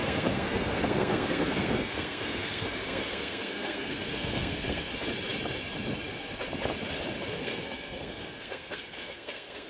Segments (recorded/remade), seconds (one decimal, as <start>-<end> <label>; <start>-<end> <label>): 0.0-4.9 remade; 4.9-7.3 recorded; 7.3-9.7 remade